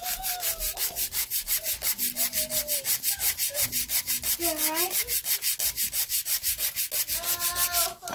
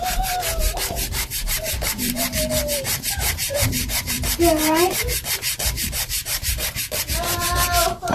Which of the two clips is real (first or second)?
first